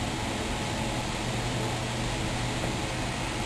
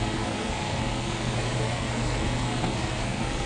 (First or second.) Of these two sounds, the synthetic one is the second